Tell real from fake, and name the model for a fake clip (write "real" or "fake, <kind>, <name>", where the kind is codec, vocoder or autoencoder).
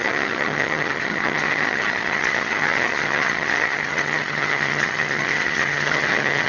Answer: fake, vocoder, HiFi-GAN